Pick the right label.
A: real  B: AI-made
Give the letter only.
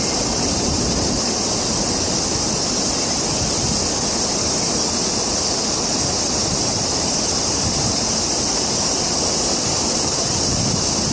A